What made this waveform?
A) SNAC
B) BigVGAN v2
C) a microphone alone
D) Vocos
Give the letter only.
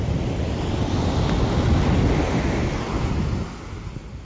C